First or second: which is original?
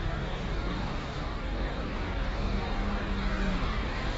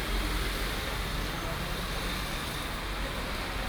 second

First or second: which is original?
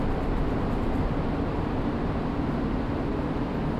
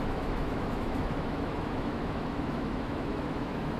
first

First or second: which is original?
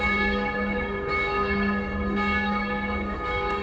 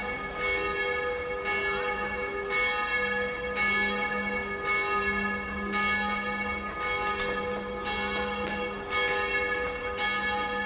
second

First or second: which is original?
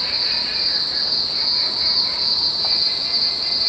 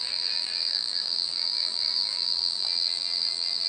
first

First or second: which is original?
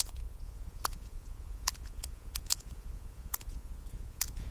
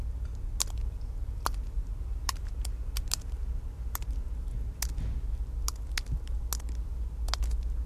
second